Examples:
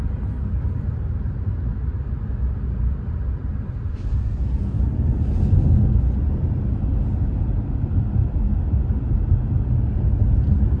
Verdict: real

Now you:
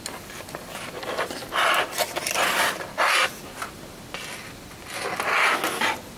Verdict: real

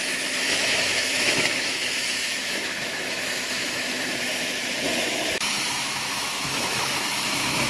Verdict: fake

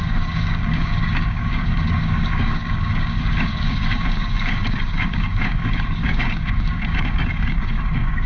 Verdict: fake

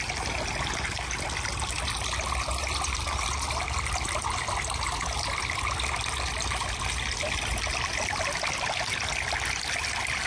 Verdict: real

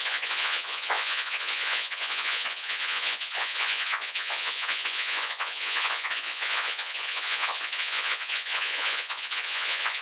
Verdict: fake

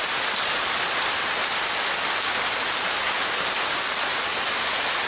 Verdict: real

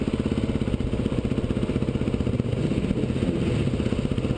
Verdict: real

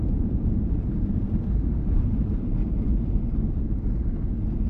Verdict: fake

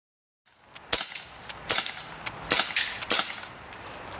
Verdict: real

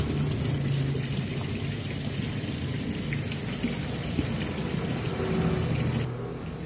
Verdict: real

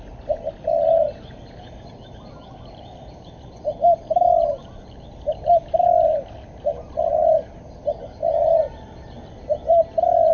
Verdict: real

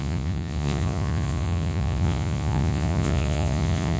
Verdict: fake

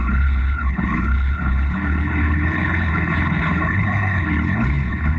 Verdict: fake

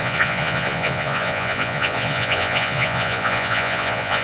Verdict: fake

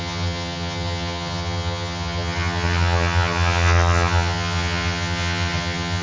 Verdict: fake